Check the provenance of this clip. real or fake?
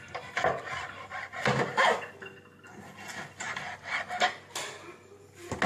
real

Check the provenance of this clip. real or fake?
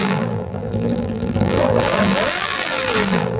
fake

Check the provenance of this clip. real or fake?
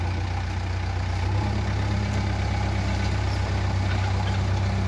real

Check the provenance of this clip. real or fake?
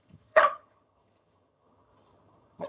fake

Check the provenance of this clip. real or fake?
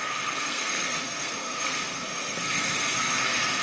fake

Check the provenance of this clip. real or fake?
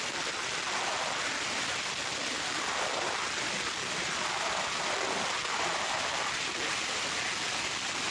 real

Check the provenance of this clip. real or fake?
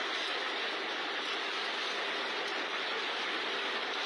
real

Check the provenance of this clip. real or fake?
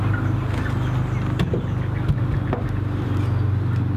real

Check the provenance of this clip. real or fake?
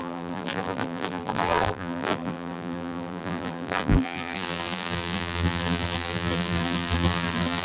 fake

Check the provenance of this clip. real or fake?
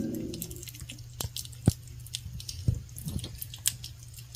real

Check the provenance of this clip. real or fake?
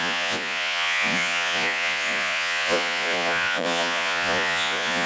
fake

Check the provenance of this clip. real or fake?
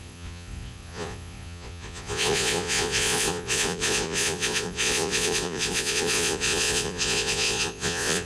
fake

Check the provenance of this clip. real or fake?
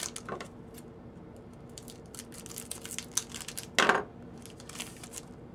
real